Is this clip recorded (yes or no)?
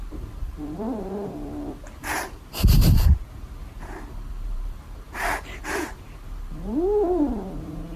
no